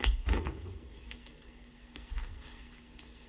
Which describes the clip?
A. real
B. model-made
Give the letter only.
B